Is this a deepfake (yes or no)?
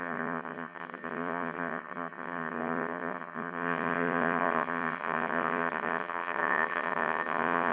yes